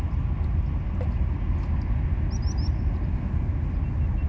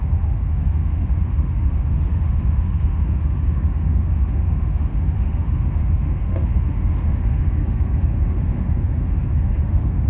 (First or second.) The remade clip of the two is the second